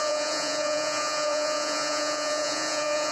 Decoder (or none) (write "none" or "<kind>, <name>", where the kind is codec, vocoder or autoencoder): vocoder, Vocos